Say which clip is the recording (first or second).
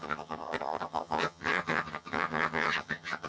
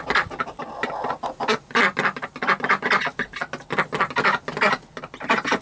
second